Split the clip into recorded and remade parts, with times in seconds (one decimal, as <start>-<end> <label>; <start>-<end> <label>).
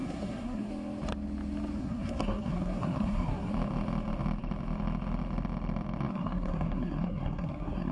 0.0-0.7 remade; 0.7-1.8 recorded; 1.8-3.5 remade; 3.5-6.1 recorded; 6.1-7.9 remade